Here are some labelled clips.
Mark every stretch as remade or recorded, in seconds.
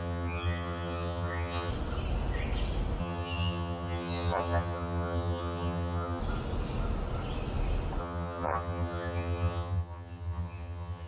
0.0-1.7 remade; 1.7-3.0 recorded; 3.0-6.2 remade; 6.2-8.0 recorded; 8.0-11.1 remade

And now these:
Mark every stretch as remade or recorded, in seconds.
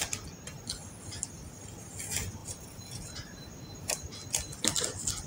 0.0-2.4 recorded; 2.4-4.1 remade; 4.1-5.3 recorded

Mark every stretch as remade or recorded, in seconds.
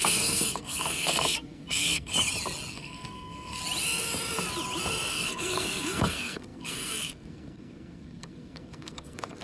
0.0-2.1 remade; 2.1-2.7 recorded; 2.7-3.6 remade; 3.6-5.1 recorded; 5.1-9.4 remade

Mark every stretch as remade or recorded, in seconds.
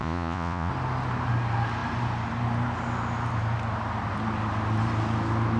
0.0-0.7 remade; 0.7-5.6 recorded